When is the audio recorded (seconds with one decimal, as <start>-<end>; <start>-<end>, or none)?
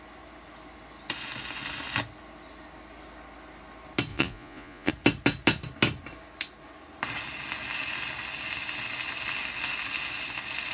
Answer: 0.0-4.1; 4.9-10.7